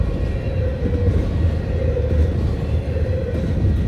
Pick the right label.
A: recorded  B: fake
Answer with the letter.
A